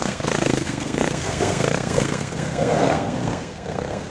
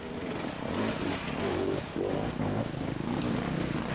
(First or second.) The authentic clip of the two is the second